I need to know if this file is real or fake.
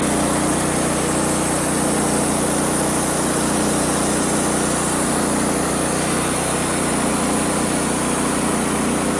real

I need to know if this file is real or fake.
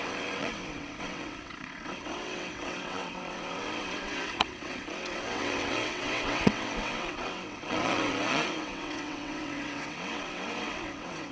fake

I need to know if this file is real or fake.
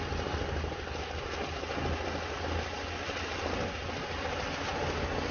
real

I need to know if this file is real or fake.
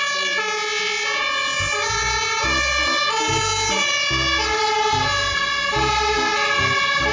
real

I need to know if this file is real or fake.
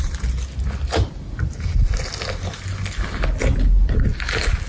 real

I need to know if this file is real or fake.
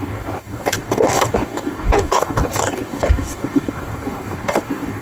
fake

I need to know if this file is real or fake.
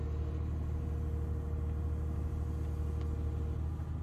real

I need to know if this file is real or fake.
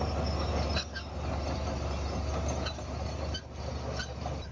real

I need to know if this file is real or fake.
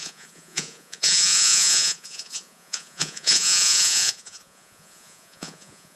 fake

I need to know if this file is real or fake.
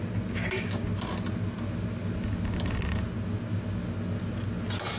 real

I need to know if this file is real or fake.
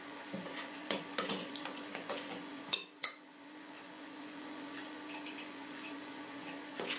fake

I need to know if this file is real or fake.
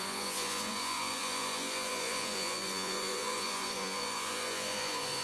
fake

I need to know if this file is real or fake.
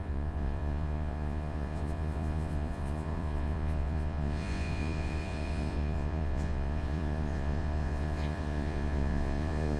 fake